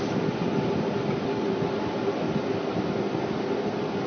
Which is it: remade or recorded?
recorded